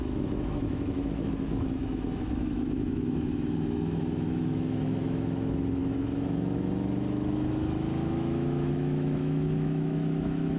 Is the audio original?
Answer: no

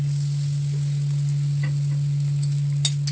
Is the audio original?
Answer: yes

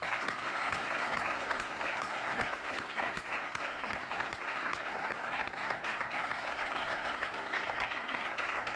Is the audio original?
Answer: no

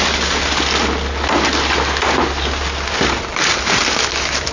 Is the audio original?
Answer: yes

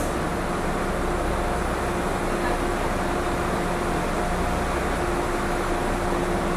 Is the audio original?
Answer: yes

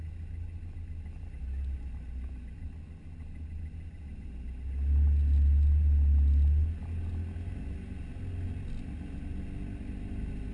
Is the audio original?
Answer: yes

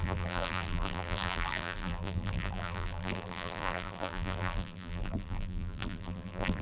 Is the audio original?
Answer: no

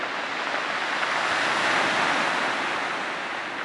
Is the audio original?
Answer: yes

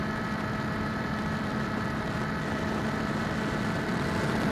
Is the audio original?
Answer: yes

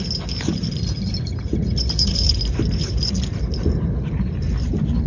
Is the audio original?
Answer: yes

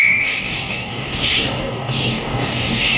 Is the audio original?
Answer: no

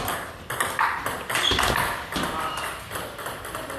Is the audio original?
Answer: yes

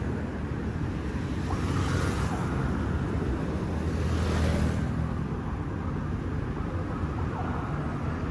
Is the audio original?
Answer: yes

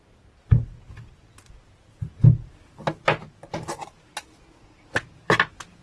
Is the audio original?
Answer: yes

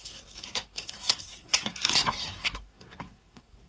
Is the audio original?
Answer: no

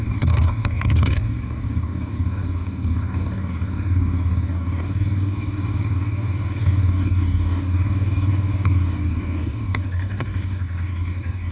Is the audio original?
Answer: no